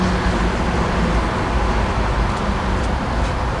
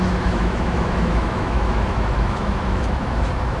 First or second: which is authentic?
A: first